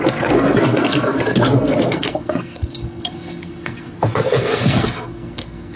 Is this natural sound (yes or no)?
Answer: no